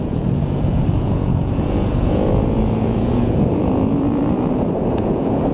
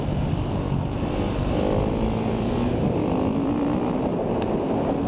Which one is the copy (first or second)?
first